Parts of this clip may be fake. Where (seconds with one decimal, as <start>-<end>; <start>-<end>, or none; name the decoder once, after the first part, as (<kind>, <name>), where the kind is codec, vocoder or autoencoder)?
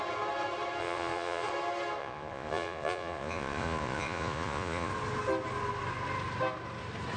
0.8-1.5 (vocoder, Vocos); 2.0-4.9